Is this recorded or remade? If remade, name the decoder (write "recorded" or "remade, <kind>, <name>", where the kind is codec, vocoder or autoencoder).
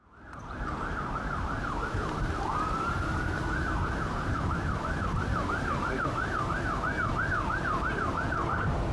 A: remade, vocoder, BigVGAN v2